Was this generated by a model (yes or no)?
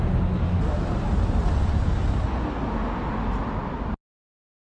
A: no